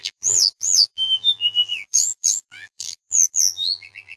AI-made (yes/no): yes